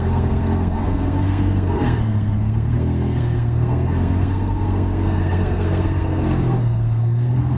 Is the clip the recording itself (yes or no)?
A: no